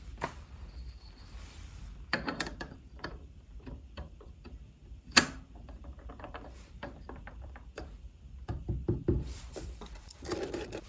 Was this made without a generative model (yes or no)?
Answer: no